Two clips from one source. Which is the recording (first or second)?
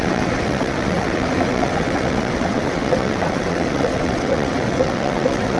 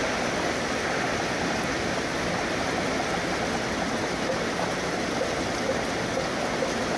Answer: second